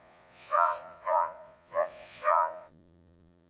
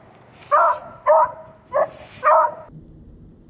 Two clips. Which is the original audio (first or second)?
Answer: second